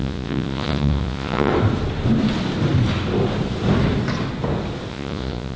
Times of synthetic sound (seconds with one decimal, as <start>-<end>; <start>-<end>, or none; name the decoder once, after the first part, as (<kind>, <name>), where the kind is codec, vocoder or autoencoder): 0.0-1.5 (vocoder, Vocos); 4.9-5.6